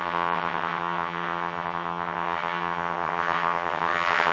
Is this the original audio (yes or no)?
no